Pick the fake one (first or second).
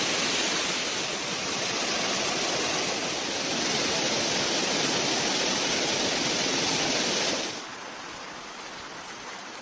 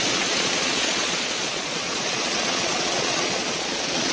second